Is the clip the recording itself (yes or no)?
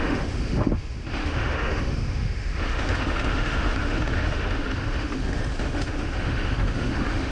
no